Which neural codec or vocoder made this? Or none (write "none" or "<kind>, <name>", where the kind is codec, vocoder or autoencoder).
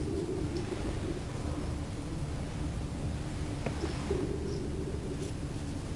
none